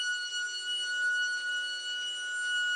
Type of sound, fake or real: real